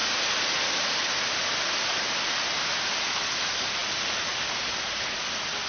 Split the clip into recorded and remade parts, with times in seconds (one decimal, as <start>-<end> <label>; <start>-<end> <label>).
0.0-5.7 recorded